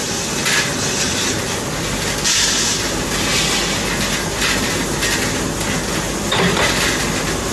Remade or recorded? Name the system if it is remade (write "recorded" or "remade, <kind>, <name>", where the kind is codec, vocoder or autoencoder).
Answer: recorded